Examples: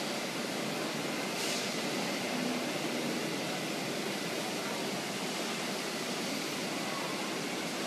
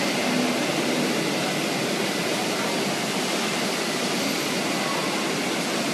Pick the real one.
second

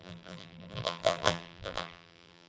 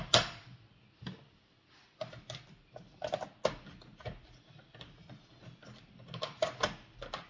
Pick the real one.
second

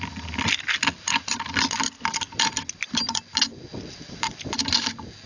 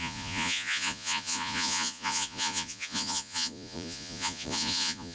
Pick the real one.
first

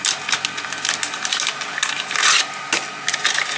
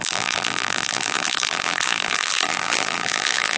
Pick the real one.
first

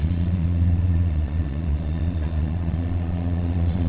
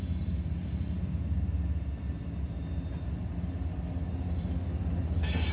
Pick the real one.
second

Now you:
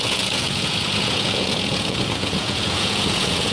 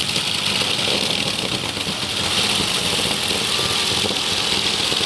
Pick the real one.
second